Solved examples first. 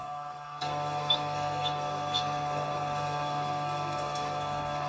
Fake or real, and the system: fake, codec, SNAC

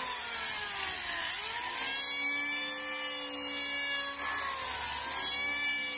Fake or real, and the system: real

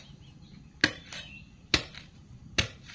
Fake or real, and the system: real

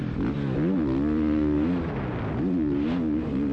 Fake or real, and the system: real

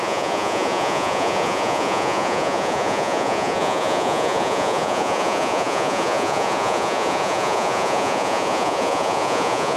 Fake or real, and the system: fake, vocoder, Vocos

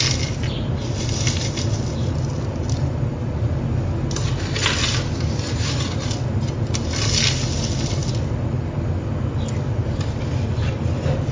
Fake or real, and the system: real